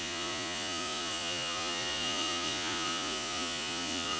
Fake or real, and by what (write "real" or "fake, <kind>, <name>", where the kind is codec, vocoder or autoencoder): fake, vocoder, Vocos